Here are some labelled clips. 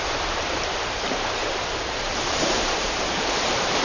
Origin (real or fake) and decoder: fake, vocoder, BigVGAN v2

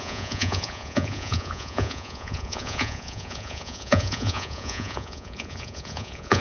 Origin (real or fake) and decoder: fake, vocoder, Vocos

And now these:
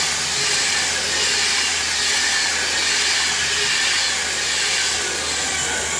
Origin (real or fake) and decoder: real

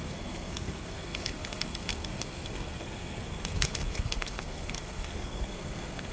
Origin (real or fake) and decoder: fake, codec, SNAC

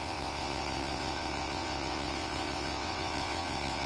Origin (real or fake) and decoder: fake, vocoder, WaveNeXt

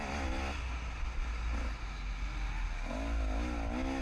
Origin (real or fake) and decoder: real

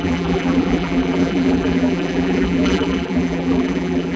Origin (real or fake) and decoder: fake, vocoder, BigVGAN v2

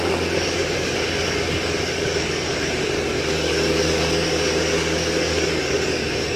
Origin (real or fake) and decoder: fake, codec, DAC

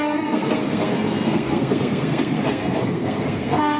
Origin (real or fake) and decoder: fake, codec, SNAC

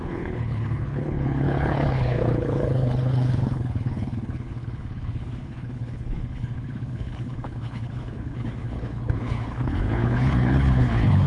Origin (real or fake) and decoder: fake, codec, HILCodec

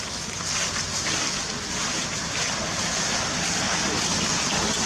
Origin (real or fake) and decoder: real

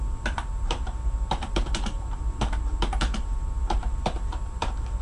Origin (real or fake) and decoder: fake, vocoder, BigVGAN v2